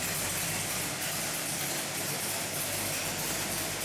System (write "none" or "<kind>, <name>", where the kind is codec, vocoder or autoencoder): none